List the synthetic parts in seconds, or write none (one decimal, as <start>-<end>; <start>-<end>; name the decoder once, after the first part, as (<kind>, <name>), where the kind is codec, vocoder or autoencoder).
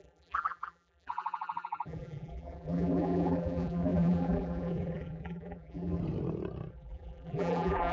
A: 0.0-6.0 (vocoder, BigVGAN v2); 6.7-7.9